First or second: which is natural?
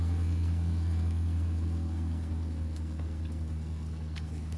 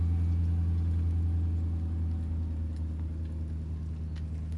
second